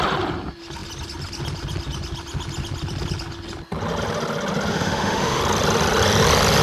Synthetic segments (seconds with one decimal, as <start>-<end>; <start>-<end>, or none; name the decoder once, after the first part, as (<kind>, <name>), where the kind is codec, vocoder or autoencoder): 4.7-5.4 (autoencoder, DAC-VAE)